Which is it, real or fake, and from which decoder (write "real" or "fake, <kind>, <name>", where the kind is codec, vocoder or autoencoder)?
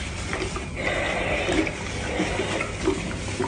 real